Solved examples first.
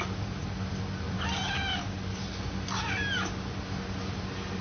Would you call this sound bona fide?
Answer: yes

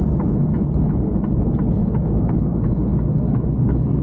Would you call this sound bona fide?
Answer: no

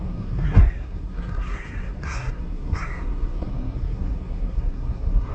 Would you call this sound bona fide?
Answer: no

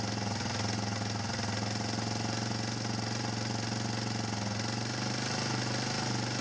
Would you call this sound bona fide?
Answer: yes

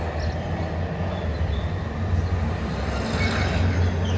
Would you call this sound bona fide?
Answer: yes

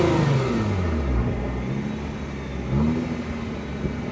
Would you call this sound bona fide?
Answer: yes